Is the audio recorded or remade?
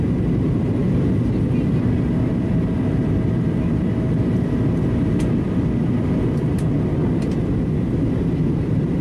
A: recorded